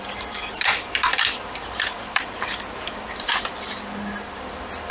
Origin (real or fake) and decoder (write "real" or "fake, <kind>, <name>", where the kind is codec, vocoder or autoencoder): fake, vocoder, BigVGAN v2